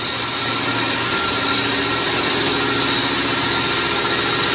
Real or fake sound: real